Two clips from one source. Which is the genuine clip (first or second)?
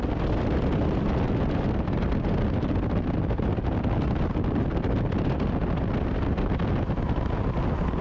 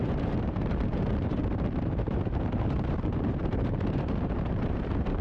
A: first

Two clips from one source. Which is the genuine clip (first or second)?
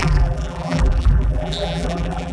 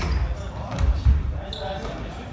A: second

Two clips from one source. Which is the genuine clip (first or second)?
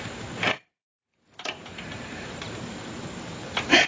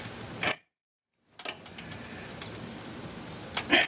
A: second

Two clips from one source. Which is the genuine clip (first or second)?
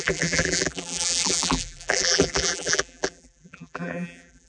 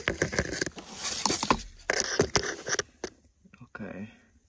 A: second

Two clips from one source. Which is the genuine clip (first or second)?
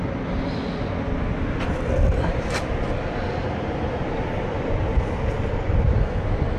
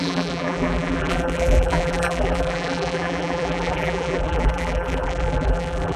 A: first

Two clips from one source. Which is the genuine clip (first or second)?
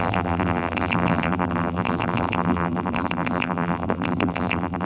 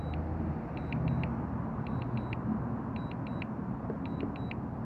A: second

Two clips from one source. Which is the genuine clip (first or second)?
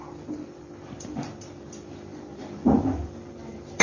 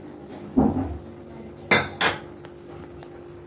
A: second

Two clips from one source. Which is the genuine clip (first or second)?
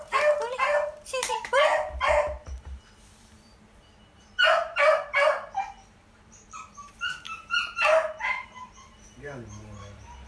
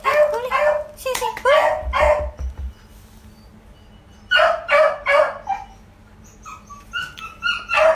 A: second